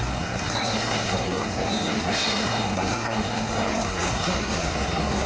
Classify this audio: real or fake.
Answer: fake